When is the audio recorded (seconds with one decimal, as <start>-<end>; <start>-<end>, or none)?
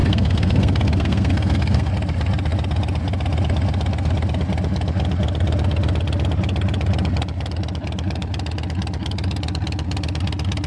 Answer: 1.9-10.7